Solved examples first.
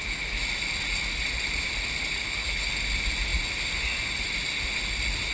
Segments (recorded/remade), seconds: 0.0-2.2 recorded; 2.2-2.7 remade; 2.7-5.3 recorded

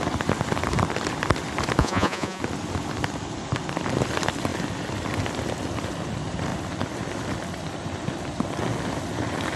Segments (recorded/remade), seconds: 0.0-1.8 recorded; 1.8-2.4 remade; 2.4-9.6 recorded

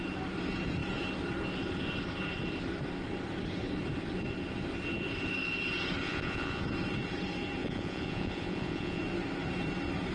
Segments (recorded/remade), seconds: 0.0-6.0 recorded; 6.0-6.6 remade; 6.6-7.6 recorded; 7.6-9.0 remade; 9.0-10.1 recorded

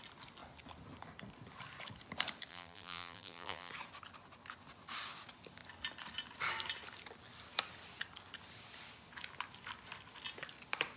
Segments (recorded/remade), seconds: 0.0-2.5 recorded; 2.5-3.7 remade; 3.7-11.0 recorded